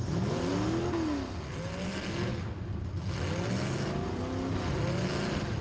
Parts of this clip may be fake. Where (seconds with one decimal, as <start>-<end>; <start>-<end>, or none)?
none